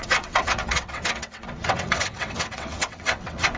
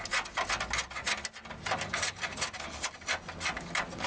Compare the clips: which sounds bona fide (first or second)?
second